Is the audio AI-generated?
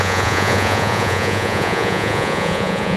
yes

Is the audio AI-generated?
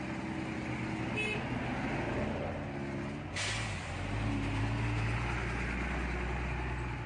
no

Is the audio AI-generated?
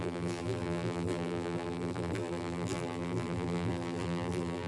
yes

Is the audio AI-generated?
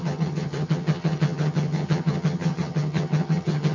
yes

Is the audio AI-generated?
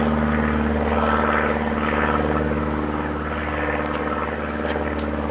no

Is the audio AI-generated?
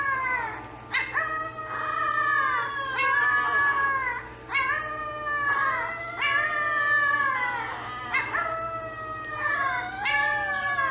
no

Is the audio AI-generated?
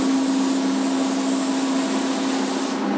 no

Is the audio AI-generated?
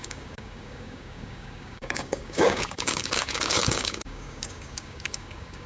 yes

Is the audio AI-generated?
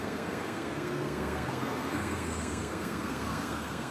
yes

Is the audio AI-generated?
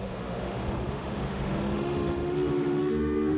yes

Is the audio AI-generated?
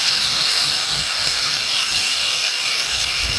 yes